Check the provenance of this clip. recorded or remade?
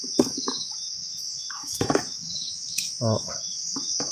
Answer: remade